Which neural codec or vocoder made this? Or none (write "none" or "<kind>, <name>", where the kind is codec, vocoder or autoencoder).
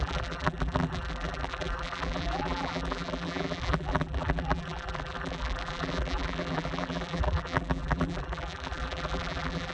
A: vocoder, BigVGAN v2